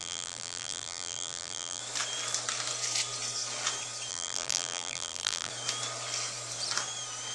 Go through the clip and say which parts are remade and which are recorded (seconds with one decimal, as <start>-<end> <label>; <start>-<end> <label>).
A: 0.0-1.8 remade; 1.8-4.1 recorded; 4.1-5.5 remade; 5.5-7.3 recorded